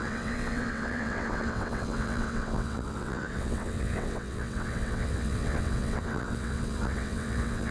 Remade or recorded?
remade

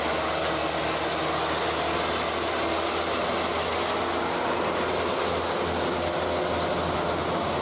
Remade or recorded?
recorded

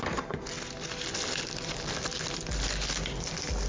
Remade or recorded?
recorded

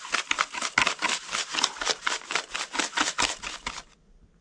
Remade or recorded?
recorded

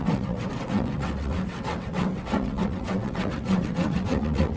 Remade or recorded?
remade